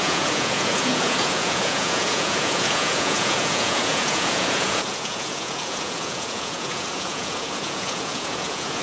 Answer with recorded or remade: remade